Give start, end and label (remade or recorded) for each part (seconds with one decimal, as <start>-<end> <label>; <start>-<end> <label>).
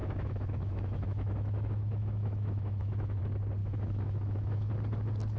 0.0-3.2 remade; 3.2-3.6 recorded; 3.6-4.7 remade; 4.7-5.4 recorded